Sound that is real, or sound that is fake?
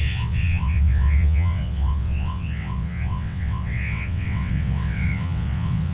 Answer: fake